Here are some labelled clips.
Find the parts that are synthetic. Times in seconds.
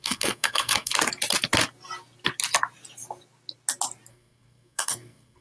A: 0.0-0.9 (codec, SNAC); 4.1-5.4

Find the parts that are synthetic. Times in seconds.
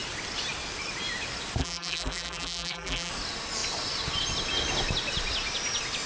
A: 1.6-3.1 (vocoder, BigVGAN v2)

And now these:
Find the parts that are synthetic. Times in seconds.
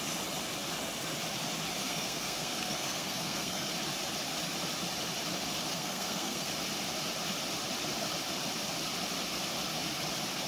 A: 1.8-3.7 (codec, SNAC); 5.7-6.5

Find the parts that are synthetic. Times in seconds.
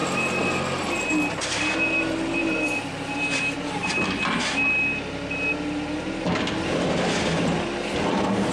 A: 2.4-2.9 (vocoder, BigVGAN v2)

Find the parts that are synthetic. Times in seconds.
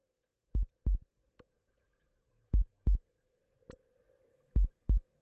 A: 0.0-0.7 (autoencoder, DAC-VAE); 1.1-3.4; 4.3-5.2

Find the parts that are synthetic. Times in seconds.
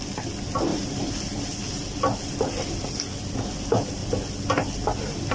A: none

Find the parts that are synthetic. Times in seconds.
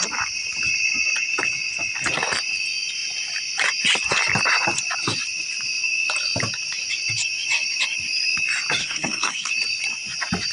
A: 8.8-9.5 (codec, SNAC)